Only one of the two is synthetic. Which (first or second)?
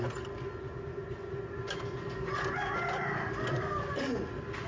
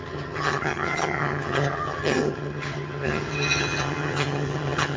second